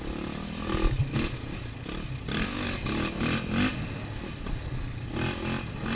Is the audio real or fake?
real